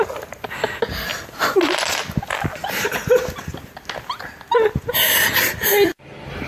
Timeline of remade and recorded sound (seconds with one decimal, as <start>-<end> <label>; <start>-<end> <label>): 0.0-6.5 recorded